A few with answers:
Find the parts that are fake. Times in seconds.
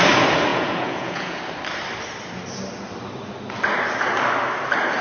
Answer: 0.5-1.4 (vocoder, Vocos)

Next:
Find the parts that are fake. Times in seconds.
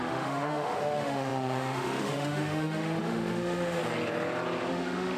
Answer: 0.0-3.8 (autoencoder, DAC-VAE); 4.7-5.2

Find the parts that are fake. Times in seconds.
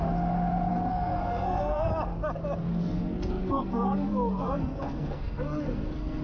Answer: 0.7-1.9 (codec, SNAC); 2.7-6.2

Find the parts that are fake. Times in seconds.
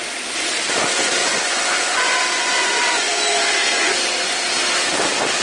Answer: 1.2-4.4 (vocoder, Vocos)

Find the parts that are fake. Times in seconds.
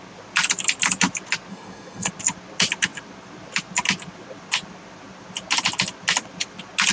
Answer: 1.5-2.1 (codec, SNAC)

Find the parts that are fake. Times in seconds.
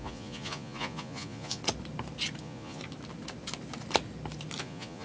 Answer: 0.0-1.6 (vocoder, Vocos); 2.4-2.8; 4.6-5.0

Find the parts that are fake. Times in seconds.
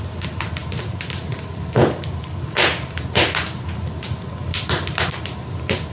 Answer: none